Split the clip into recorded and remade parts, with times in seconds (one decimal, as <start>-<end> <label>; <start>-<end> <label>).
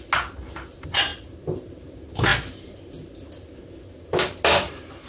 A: 0.0-5.1 recorded